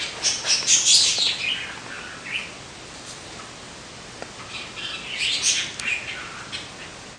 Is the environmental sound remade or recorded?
recorded